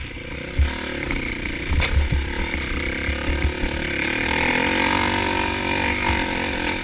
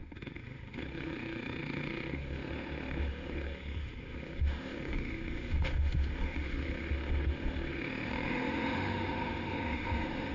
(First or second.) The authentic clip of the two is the first